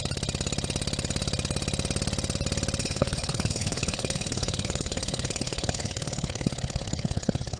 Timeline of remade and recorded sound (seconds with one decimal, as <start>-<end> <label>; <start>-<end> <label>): 0.0-2.8 recorded; 2.8-7.6 remade